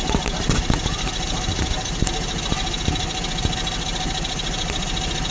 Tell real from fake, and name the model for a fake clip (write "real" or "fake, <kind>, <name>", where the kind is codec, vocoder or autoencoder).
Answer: real